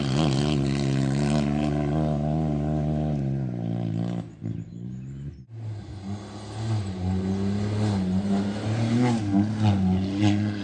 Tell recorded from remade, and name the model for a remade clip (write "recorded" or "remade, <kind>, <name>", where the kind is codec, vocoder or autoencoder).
recorded